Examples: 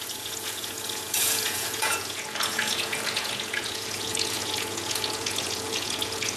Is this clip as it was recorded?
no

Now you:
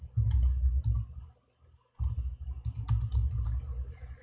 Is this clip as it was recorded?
yes